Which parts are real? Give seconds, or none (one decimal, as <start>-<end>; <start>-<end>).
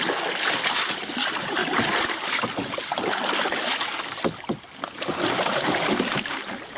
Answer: 0.0-6.8